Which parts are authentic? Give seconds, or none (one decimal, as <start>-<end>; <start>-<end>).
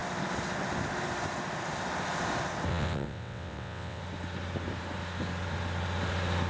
0.0-2.7; 4.0-6.5